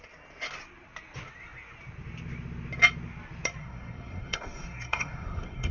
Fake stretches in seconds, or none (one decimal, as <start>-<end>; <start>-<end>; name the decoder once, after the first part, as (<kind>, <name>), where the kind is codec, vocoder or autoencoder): 3.6-5.7 (codec, SNAC)